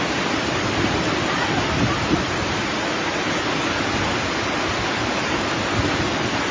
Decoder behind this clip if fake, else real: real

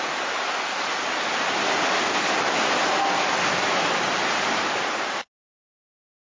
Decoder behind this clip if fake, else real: real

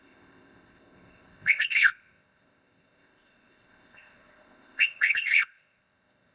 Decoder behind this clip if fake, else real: fake, codec, ZipCodec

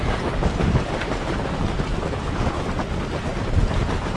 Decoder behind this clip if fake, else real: real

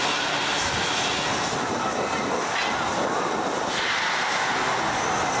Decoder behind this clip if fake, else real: real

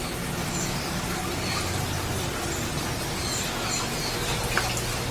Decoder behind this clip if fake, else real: real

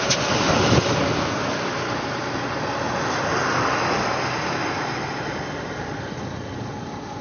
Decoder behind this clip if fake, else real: real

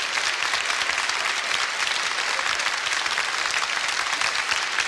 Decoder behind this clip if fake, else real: real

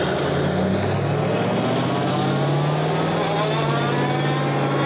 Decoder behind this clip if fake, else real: real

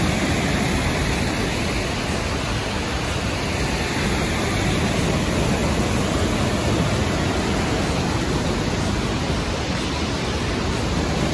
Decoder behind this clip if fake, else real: real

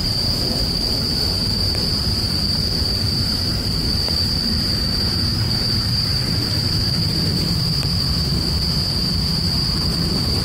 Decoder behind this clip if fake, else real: fake, vocoder, BigVGAN v2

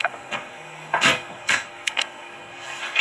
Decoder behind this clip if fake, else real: fake, codec, SNAC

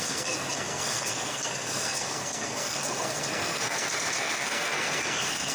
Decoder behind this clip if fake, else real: fake, codec, SNAC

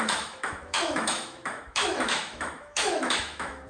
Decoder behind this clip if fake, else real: fake, autoencoder, DAC-VAE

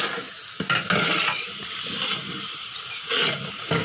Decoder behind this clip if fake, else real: real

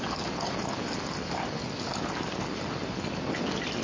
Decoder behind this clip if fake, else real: real